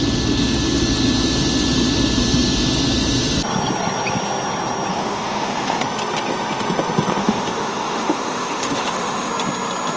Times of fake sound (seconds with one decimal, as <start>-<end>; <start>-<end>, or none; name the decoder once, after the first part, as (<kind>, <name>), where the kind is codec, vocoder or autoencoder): 4.9-5.8 (autoencoder, DAC-VAE); 7.2-9.3